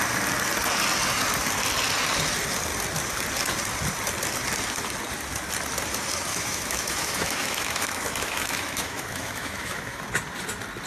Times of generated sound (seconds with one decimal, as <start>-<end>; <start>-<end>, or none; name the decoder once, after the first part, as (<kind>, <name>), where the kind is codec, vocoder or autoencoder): 6.3-10.0 (autoencoder, DAC-VAE)